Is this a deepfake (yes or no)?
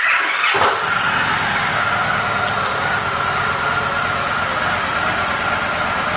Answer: no